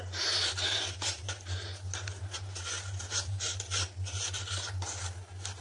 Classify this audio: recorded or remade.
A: recorded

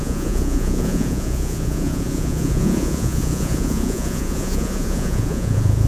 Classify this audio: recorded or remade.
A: remade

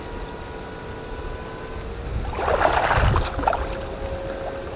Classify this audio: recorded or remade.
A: recorded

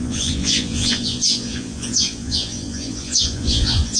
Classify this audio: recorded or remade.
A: remade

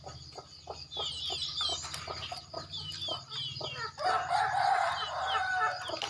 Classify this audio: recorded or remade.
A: recorded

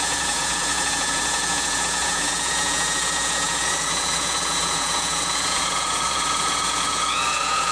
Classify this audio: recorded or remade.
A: remade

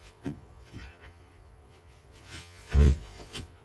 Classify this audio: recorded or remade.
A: remade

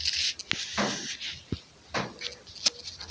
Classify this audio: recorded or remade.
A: recorded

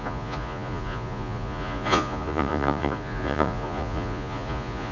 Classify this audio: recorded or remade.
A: remade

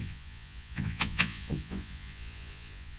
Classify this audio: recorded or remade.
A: remade